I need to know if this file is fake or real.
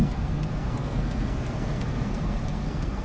fake